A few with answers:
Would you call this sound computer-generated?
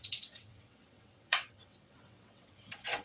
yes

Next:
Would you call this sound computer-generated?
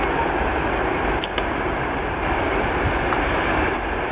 no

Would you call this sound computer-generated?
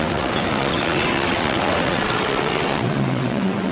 yes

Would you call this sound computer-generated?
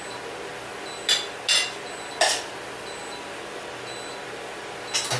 no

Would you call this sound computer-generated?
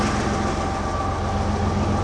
no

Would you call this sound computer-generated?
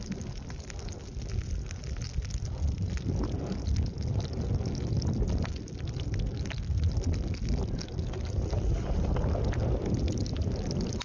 no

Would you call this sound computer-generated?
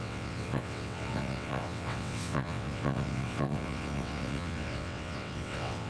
yes